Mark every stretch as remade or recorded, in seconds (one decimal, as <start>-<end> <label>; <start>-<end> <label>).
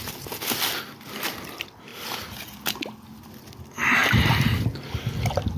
0.0-5.6 recorded